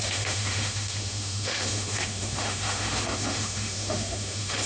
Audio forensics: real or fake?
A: fake